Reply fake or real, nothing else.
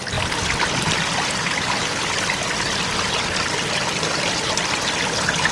real